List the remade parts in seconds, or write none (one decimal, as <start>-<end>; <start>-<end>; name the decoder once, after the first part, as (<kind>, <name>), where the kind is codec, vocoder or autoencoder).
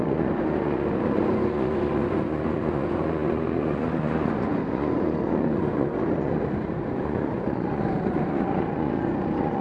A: 0.0-9.6 (vocoder, Vocos)